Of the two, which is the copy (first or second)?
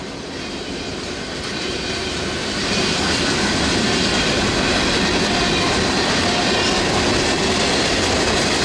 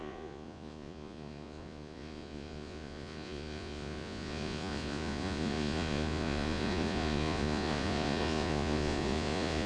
second